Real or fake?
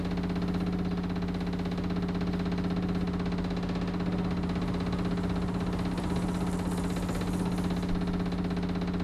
real